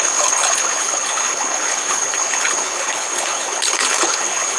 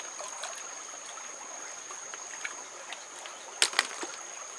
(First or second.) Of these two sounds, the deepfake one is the first